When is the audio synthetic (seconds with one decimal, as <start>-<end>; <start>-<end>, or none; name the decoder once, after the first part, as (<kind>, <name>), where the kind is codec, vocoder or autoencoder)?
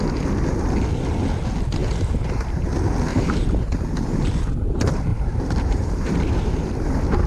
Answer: 3.1-4.2 (vocoder, BigVGAN v2); 5.1-6.1